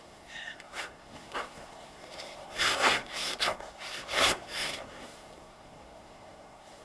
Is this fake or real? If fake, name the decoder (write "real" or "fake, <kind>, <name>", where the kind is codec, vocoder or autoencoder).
fake, codec, SNAC